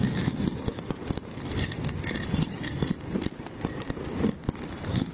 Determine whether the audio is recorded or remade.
recorded